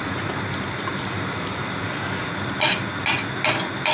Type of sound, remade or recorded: recorded